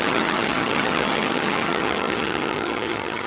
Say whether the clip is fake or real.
fake